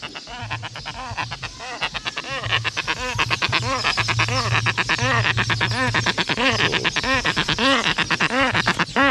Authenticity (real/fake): real